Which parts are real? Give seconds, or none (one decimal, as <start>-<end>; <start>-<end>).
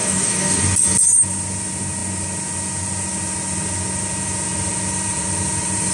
0.6-5.9